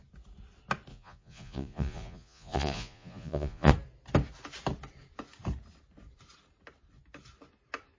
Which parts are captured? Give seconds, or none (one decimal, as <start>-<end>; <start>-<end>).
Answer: 0.0-0.9; 3.7-8.0